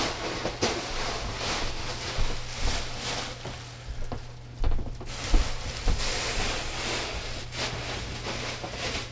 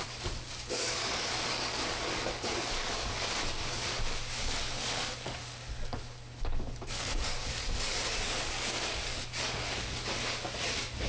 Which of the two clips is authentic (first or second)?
first